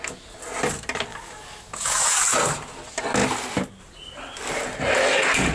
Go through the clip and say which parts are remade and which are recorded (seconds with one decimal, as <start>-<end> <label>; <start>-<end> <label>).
0.0-1.1 recorded; 1.1-2.2 remade; 2.2-5.5 recorded